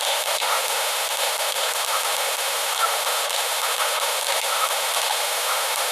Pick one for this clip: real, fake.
fake